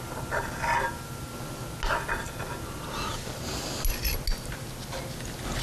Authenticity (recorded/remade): recorded